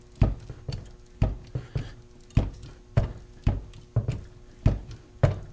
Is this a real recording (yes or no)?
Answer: yes